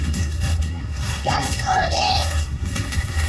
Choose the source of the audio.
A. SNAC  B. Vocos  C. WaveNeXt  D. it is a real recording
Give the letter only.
A